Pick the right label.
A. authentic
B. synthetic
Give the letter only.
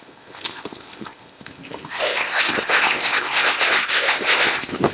B